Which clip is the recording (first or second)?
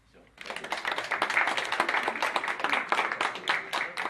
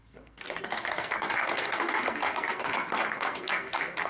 first